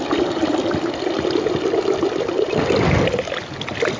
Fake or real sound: real